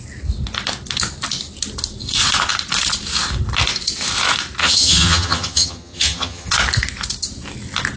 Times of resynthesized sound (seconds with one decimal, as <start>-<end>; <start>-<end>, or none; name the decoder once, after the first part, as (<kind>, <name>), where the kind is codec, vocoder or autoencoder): 4.6-6.5 (vocoder, HiFi-GAN)